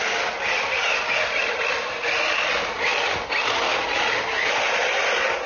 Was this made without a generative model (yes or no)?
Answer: yes